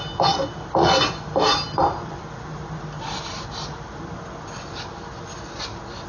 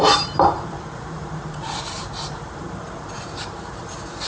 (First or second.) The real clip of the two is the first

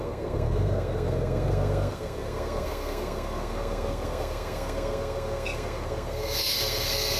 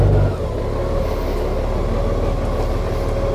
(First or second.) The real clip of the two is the second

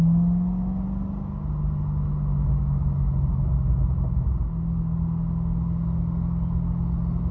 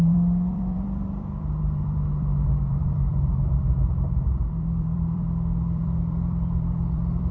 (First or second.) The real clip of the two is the first